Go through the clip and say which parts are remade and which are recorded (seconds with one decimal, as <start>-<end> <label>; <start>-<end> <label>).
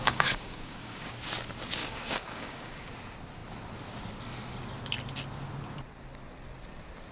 0.0-1.1 remade; 1.1-1.8 recorded; 1.8-2.9 remade; 2.9-7.1 recorded